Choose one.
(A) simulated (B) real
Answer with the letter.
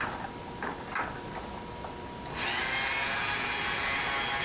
B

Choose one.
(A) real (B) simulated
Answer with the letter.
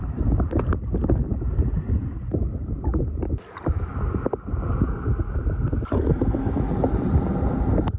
A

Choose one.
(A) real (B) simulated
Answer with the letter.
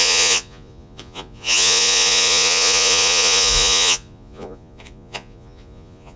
B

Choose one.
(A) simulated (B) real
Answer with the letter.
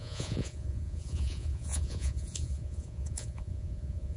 A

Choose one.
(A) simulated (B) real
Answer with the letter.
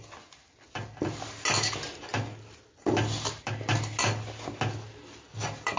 B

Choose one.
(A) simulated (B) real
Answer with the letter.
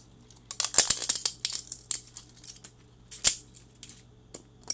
B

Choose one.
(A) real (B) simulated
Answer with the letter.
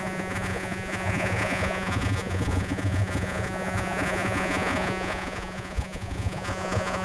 B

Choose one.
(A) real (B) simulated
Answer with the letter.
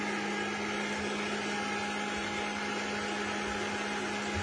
A